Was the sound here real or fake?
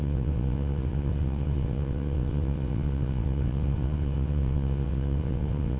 fake